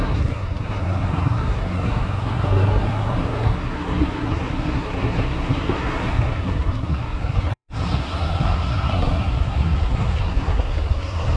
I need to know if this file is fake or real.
fake